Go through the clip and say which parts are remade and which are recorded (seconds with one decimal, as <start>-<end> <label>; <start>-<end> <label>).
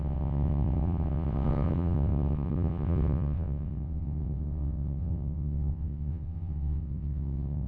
0.0-7.7 remade